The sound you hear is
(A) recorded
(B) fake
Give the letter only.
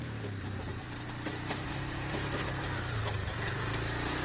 B